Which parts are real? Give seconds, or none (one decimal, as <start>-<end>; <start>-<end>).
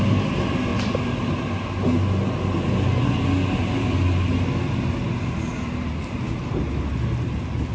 0.0-7.7